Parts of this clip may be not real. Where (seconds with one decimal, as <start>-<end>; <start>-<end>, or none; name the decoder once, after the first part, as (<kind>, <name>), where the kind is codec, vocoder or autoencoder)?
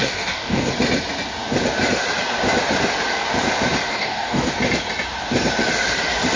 0.0-0.7 (codec, DAC); 3.9-4.5